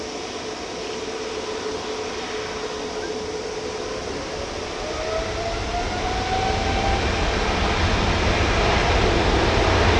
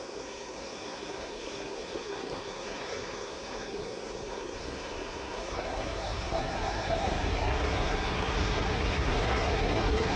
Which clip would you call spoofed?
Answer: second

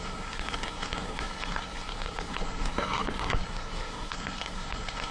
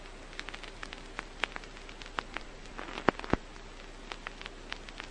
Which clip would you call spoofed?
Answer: first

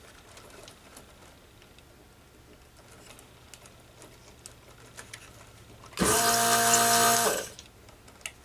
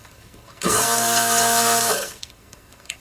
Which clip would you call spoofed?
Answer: second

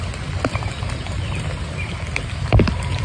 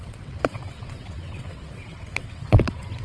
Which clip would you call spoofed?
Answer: second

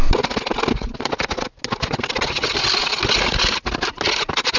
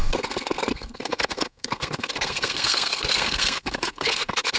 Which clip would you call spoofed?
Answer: second